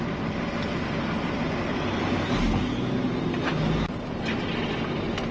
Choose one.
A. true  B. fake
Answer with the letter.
A